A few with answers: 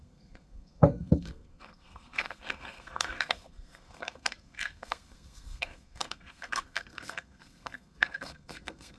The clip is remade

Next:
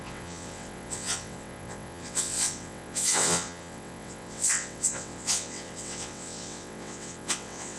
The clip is remade